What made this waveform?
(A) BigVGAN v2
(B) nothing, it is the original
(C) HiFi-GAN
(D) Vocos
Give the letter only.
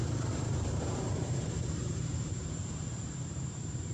A